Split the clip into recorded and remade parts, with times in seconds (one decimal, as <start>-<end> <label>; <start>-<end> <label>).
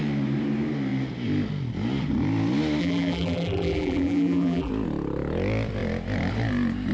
0.0-2.8 recorded; 2.8-4.7 remade; 4.7-6.9 recorded